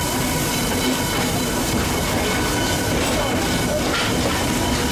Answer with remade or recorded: recorded